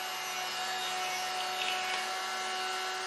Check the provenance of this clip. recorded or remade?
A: recorded